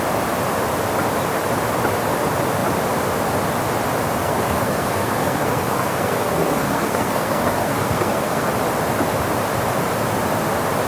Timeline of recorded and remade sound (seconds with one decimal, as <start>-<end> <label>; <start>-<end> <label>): 0.0-4.2 recorded; 4.2-8.5 remade; 8.5-10.9 recorded